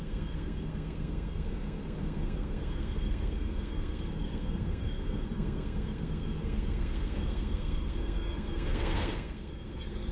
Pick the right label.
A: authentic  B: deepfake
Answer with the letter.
B